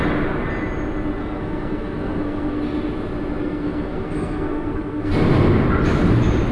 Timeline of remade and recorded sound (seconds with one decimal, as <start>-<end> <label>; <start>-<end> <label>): 0.0-1.2 recorded; 1.2-2.6 remade; 2.6-3.4 recorded; 3.4-5.1 remade; 5.1-6.5 recorded